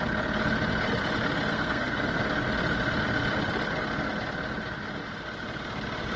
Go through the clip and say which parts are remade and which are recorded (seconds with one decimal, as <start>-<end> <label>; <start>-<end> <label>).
0.0-1.5 recorded; 1.5-2.2 remade; 2.2-6.2 recorded